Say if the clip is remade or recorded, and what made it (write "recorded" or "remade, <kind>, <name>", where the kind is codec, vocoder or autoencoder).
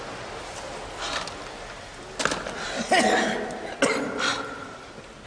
recorded